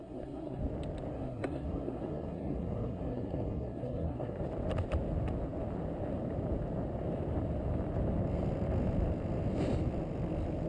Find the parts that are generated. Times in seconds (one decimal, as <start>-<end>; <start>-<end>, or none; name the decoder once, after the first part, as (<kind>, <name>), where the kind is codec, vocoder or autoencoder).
0.0-0.6 (codec, SNAC); 1.1-4.4